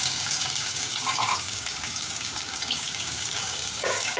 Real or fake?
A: fake